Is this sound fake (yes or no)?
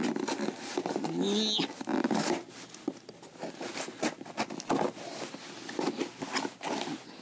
no